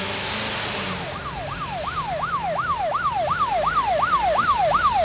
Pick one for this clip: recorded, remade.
recorded